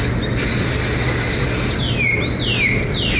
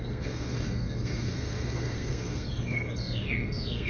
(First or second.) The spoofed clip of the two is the second